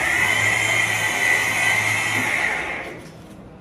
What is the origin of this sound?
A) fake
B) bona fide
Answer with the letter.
B